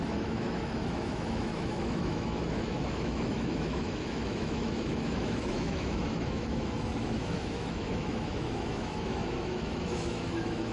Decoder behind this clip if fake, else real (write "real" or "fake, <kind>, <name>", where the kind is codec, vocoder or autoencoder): fake, autoencoder, DAC-VAE